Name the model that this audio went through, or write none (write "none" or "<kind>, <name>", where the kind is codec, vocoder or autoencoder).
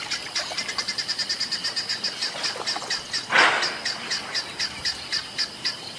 none